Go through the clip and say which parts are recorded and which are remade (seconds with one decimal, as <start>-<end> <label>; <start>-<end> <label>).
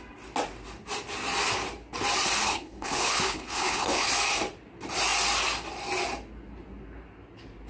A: 0.0-2.4 recorded; 2.4-4.1 remade; 4.1-7.7 recorded